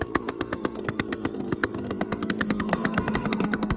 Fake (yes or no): yes